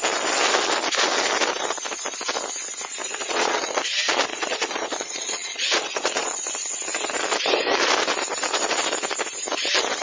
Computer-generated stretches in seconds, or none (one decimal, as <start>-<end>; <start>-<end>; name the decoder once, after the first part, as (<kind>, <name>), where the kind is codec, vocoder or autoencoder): 3.0-3.8 (vocoder, Vocos); 4.3-6.5